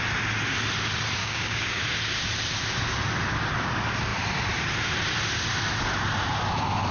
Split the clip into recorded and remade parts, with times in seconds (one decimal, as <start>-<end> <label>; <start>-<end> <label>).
0.0-1.2 recorded; 1.2-1.8 remade; 1.8-6.9 recorded